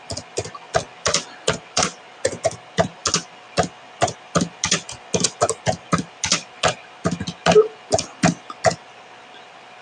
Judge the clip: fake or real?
real